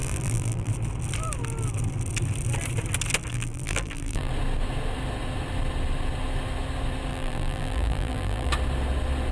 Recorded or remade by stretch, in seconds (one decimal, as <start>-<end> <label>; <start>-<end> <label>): 0.0-0.7 remade; 0.7-3.3 recorded; 3.3-4.3 remade; 4.3-7.1 recorded; 7.1-8.5 remade; 8.5-9.3 recorded